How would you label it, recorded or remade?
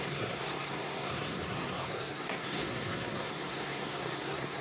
remade